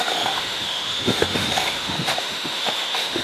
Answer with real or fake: fake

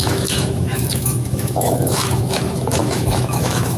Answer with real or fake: fake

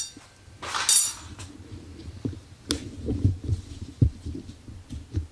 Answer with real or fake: real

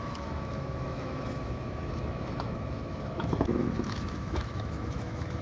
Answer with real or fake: fake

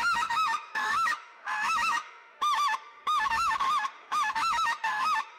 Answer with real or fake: fake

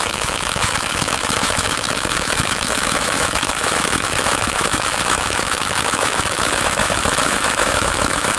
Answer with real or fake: fake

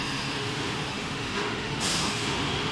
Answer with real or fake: fake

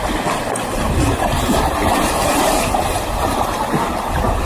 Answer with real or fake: real